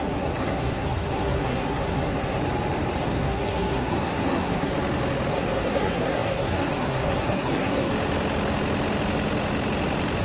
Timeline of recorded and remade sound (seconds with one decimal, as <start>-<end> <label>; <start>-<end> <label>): 0.0-2.4 remade; 2.4-3.0 recorded; 3.0-4.7 remade; 4.7-5.3 recorded; 5.3-7.9 remade; 7.9-10.2 recorded